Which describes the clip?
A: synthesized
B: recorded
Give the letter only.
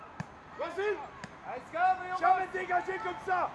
B